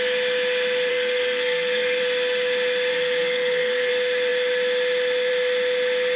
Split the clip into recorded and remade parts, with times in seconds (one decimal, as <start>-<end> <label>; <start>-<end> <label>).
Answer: 0.0-0.9 recorded; 0.9-2.0 remade; 2.0-2.9 recorded; 2.9-3.9 remade; 3.9-6.2 recorded